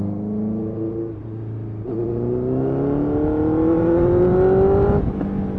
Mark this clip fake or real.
real